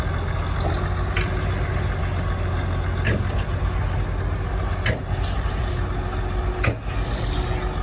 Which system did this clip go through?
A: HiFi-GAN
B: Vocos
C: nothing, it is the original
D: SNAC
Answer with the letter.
C